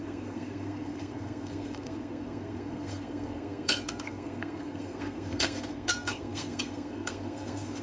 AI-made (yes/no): yes